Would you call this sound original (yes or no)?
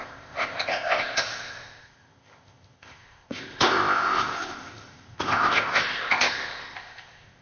no